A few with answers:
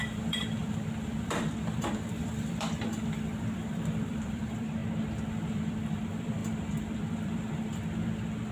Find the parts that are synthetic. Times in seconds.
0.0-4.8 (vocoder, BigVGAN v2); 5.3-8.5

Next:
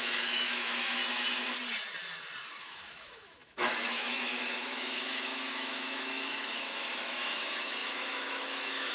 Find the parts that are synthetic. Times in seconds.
0.0-1.0 (autoencoder, DAC-VAE); 2.6-8.9

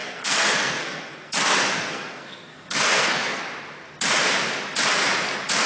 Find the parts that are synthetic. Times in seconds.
0.0-3.4 (codec, SNAC)

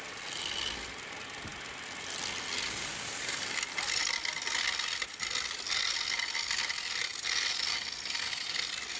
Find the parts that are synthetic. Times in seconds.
none

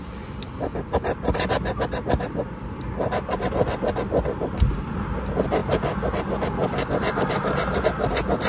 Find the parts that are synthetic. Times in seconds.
none

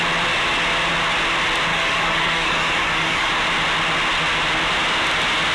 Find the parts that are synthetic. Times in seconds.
1.7-3.3 (codec, DAC)

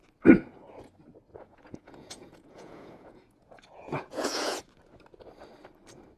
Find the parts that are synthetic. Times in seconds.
1.3-4.6 (vocoder, Vocos)